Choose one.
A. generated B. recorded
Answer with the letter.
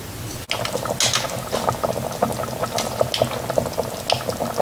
B